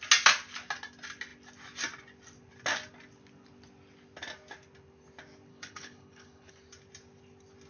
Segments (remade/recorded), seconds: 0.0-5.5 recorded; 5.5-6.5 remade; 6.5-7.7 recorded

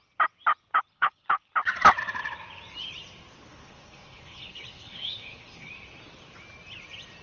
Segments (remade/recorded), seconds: 0.0-0.9 recorded; 0.9-1.5 remade; 1.5-3.5 recorded; 3.5-5.7 remade; 5.7-7.2 recorded

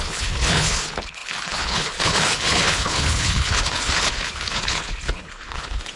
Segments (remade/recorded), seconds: 0.0-6.0 remade

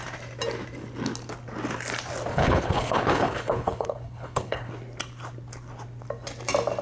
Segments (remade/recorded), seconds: 0.0-2.3 recorded; 2.3-4.7 remade; 4.7-6.8 recorded

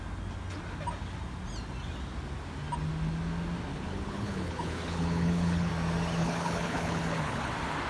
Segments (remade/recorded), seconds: 0.0-3.7 recorded; 3.7-5.7 remade; 5.7-6.2 recorded; 6.2-7.5 remade; 7.5-7.9 recorded

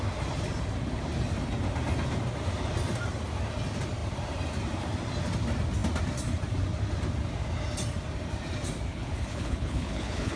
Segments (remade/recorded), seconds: 0.0-8.9 recorded; 8.9-10.4 remade